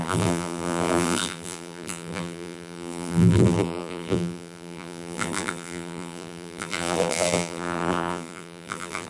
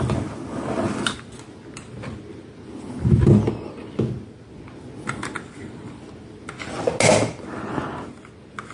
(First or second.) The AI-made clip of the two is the first